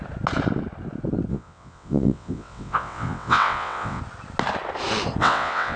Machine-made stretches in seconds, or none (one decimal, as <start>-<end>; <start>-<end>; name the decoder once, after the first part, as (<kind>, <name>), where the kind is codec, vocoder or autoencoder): 1.3-4.0 (vocoder, WaveNeXt); 5.2-5.8